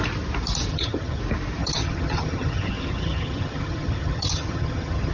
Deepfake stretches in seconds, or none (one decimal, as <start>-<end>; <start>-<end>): 0.7-1.2; 1.6-5.1